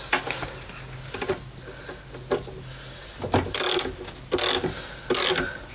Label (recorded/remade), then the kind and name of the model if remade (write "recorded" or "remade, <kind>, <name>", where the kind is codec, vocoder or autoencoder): recorded